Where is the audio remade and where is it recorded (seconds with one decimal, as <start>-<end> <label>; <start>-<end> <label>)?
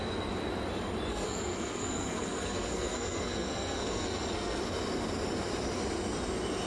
0.0-1.1 recorded; 1.1-4.6 remade; 4.6-6.7 recorded